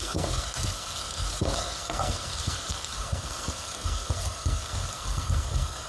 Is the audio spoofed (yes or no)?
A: yes